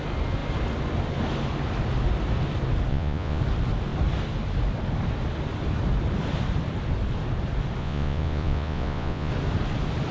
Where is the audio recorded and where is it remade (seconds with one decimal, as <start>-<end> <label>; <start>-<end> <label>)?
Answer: 0.0-2.9 recorded; 2.9-3.4 remade; 3.4-7.8 recorded; 7.8-9.3 remade; 9.3-10.1 recorded